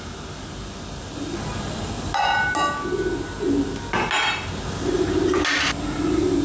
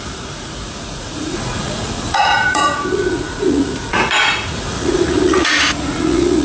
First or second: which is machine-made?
second